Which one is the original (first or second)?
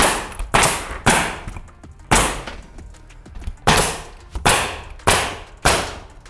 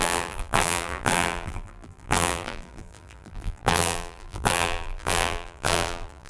first